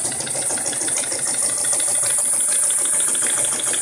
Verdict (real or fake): real